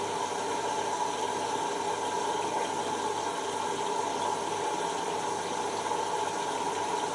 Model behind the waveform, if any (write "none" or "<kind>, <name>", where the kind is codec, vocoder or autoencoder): none